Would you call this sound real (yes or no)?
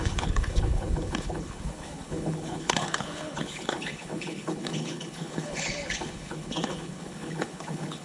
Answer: no